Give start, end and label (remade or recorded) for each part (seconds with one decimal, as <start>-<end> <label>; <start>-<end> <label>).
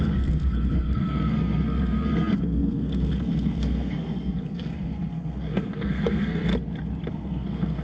0.0-6.5 remade; 6.5-7.1 recorded; 7.1-7.8 remade